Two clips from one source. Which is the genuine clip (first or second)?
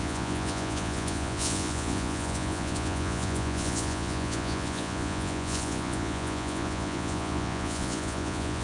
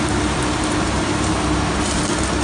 second